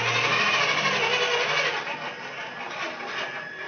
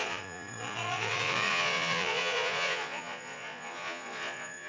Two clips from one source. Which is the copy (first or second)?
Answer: second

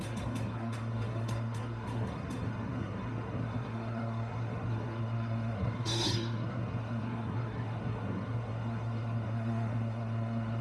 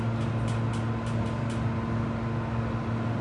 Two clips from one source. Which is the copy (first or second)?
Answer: first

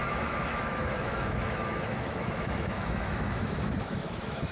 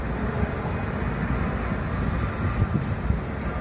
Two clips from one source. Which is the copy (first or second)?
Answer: first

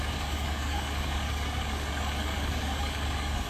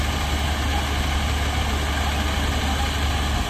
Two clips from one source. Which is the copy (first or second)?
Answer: first